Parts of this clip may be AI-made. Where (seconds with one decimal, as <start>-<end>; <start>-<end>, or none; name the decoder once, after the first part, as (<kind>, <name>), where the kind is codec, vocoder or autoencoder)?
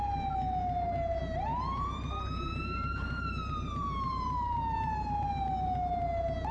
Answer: 1.5-5.4 (vocoder, BigVGAN v2)